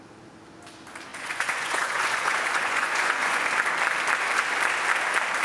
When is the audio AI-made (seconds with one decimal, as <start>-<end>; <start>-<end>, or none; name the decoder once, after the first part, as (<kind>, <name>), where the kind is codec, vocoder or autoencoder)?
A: 1.1-3.5 (vocoder, Vocos)